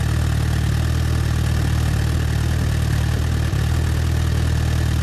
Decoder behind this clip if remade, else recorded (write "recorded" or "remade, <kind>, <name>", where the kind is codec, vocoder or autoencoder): recorded